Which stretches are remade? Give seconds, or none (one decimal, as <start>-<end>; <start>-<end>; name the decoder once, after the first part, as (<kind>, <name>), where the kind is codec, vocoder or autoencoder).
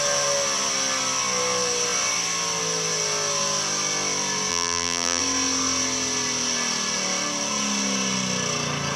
4.5-5.2 (vocoder, BigVGAN v2)